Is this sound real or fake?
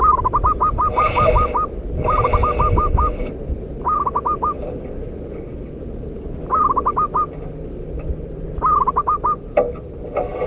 real